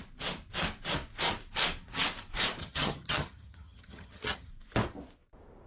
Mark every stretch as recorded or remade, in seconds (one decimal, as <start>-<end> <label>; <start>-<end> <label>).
0.0-2.6 recorded; 2.6-4.5 remade; 4.5-5.7 recorded